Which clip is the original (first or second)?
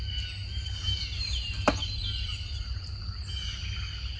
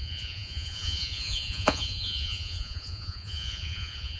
first